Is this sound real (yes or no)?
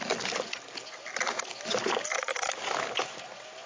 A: yes